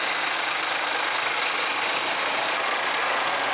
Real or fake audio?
real